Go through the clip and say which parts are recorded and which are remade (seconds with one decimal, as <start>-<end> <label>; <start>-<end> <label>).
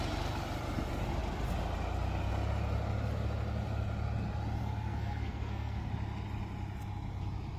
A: 0.0-4.6 recorded; 4.6-5.9 remade; 5.9-7.6 recorded